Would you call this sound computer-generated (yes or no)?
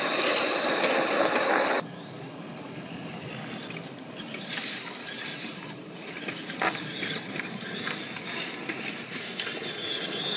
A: no